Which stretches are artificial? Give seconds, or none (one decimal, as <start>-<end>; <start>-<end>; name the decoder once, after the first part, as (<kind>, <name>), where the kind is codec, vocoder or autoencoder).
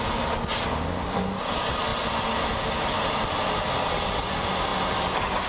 none